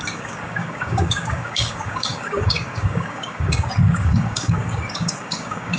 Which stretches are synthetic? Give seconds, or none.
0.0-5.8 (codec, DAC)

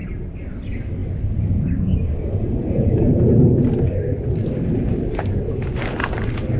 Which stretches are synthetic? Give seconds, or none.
none

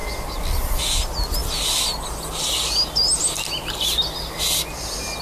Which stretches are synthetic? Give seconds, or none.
none

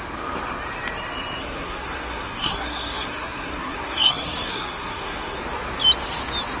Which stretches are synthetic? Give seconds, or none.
1.4-5.4 (codec, SNAC)

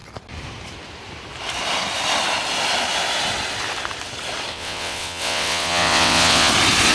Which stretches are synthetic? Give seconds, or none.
4.5-6.5 (vocoder, WaveNeXt)

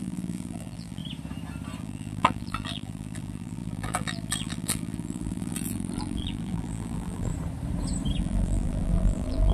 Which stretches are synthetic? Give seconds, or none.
0.0-1.0 (vocoder, BigVGAN v2); 1.8-7.3; 8.2-9.5

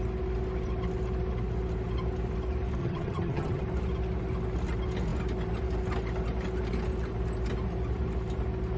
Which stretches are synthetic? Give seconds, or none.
2.8-3.6 (vocoder, HiFi-GAN)

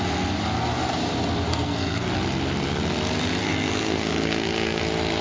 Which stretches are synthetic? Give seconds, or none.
1.5-2.1 (codec, SNAC); 3.4-4.8